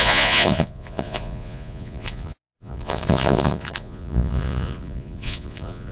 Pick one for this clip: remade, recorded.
remade